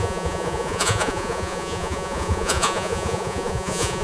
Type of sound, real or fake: fake